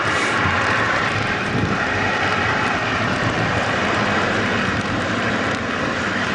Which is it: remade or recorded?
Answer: remade